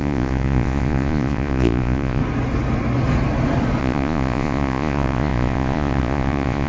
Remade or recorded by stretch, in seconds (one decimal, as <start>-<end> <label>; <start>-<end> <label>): 0.0-2.2 remade; 2.2-3.8 recorded; 3.8-6.7 remade